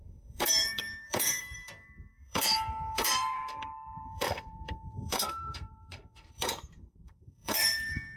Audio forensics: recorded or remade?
remade